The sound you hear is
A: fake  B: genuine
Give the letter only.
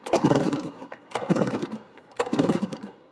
A